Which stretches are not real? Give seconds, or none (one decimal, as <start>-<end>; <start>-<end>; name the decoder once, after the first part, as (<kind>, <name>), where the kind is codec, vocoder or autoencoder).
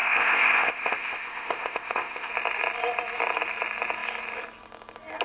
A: 0.0-2.3 (codec, ZipCodec)